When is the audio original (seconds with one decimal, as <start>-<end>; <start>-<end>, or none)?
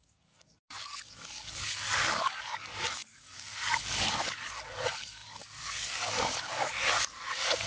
none